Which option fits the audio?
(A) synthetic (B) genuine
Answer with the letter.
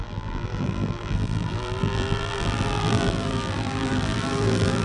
A